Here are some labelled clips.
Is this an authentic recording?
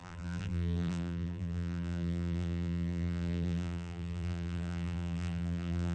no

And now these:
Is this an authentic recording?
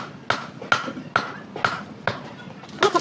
yes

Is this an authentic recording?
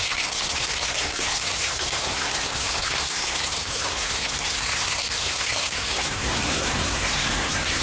no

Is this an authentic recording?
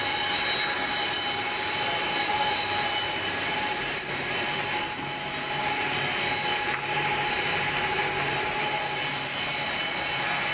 yes